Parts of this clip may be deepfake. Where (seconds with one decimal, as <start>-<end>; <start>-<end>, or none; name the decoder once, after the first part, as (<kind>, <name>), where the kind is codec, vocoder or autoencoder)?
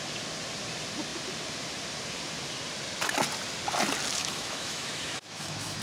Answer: 4.2-5.8 (autoencoder, DAC-VAE)